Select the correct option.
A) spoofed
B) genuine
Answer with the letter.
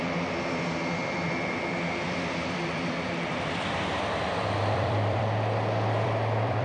A